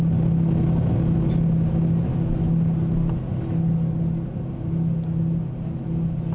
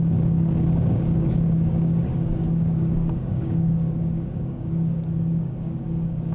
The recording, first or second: first